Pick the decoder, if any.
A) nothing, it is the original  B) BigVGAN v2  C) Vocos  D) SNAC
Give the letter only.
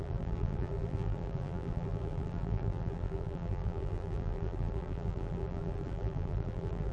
B